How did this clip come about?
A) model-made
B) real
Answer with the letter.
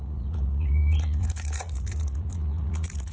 A